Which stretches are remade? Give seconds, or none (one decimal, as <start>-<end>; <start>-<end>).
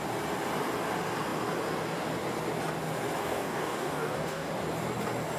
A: 3.2-4.5